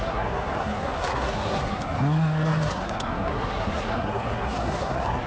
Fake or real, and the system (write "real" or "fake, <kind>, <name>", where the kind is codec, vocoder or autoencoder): fake, codec, SNAC